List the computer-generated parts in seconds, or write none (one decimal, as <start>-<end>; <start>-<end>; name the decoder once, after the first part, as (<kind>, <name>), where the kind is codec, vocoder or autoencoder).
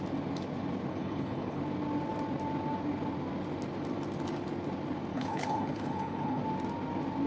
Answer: 0.9-1.6 (codec, HILCodec); 5.1-6.4